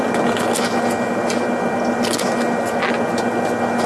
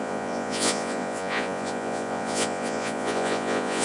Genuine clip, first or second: first